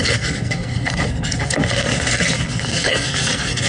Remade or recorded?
remade